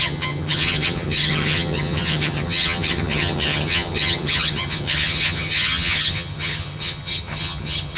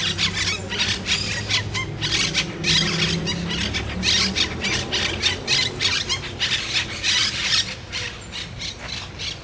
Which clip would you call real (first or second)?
second